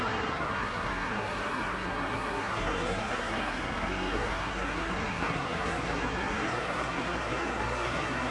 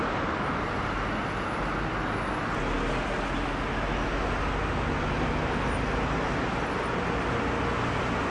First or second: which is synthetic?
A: first